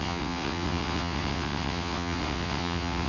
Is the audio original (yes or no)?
no